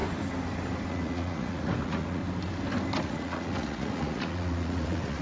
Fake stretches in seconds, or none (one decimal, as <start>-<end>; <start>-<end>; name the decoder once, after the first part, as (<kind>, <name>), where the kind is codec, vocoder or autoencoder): 0.9-2.2 (vocoder, Vocos); 3.0-5.2